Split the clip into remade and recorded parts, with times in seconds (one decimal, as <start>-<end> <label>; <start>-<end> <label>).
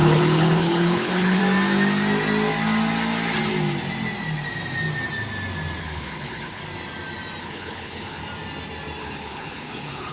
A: 0.0-1.4 remade; 1.4-5.8 recorded; 5.8-6.6 remade; 6.6-7.4 recorded; 7.4-8.2 remade; 8.2-9.0 recorded; 9.0-10.1 remade